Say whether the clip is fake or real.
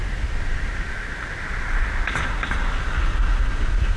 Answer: real